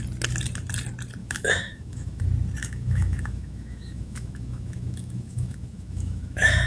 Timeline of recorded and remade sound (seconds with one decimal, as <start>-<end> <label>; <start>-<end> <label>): 0.0-1.2 recorded; 1.2-2.2 remade; 2.2-2.6 recorded; 2.6-6.7 remade